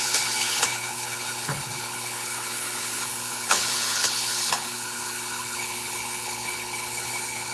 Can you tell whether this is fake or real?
fake